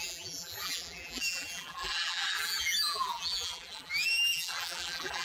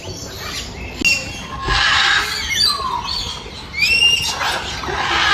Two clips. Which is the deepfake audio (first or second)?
first